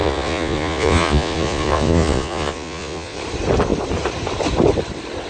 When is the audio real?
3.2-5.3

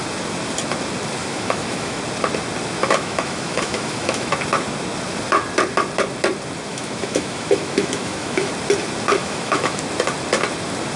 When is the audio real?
0.0-1.2; 2.0-2.8; 4.3-6.7; 8.5-9.2; 9.8-11.0

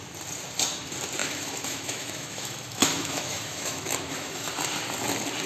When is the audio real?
0.0-1.2; 4.5-5.5

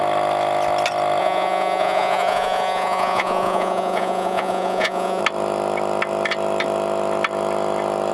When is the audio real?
0.0-1.2; 5.2-8.1

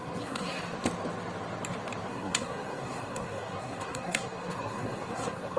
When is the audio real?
0.6-2.1

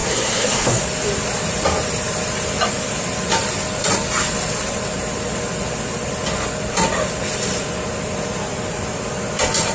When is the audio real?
0.8-9.7

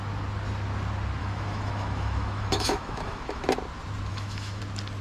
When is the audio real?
0.0-1.2; 3.4-4.1; 4.6-5.0